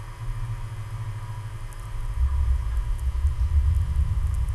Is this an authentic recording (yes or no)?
yes